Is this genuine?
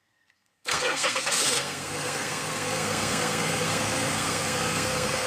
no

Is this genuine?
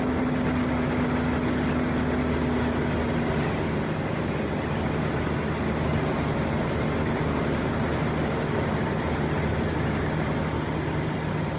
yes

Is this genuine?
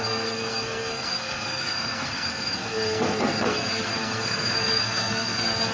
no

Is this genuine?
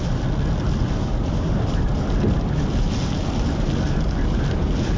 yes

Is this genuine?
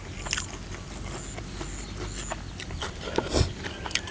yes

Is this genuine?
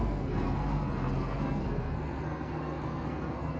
no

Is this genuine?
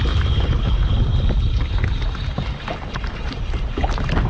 yes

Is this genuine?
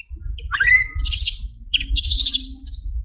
yes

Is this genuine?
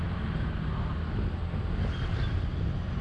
yes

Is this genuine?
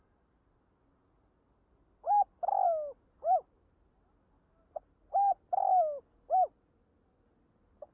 yes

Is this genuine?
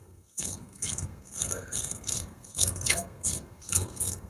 no